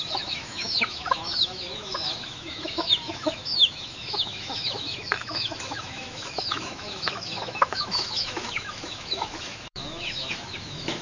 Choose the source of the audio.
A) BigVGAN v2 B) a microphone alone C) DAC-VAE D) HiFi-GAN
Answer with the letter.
C